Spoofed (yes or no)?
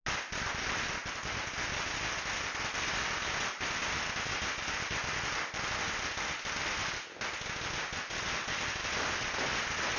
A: no